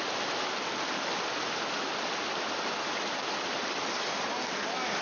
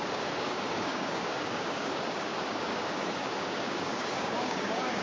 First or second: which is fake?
second